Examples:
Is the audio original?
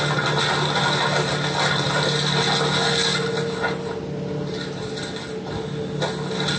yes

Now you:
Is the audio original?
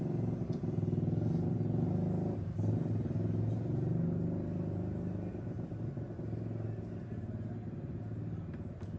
yes